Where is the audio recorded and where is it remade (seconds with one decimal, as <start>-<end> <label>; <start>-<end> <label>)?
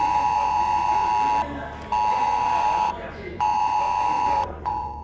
0.0-1.1 remade; 1.1-2.1 recorded; 2.1-5.0 remade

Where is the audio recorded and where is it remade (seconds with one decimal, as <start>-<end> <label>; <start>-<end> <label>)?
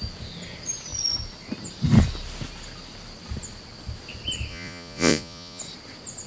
0.0-4.5 recorded; 4.5-5.6 remade; 5.6-6.3 recorded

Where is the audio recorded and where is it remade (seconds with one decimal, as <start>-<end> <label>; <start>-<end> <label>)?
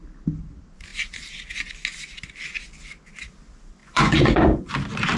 0.0-3.8 recorded; 3.8-4.7 remade; 4.7-5.2 recorded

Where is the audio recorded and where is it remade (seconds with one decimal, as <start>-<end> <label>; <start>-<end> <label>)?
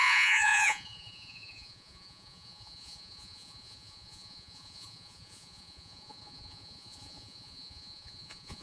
0.0-8.6 remade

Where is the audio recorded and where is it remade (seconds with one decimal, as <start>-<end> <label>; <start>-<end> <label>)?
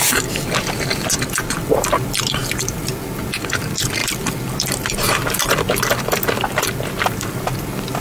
0.0-8.0 recorded